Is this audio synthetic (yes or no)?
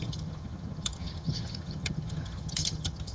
yes